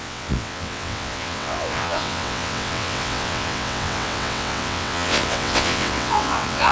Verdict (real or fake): fake